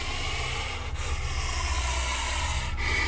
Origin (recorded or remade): recorded